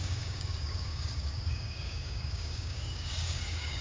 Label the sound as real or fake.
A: fake